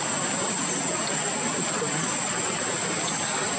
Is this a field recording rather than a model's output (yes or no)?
yes